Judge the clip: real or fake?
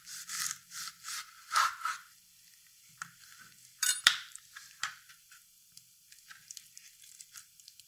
fake